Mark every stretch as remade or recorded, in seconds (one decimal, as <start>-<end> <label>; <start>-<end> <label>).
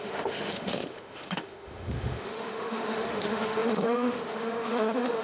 0.0-5.2 remade